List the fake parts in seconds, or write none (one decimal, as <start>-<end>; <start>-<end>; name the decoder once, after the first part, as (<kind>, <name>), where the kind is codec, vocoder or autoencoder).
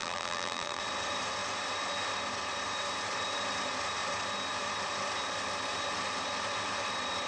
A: 0.0-0.8 (vocoder, BigVGAN v2)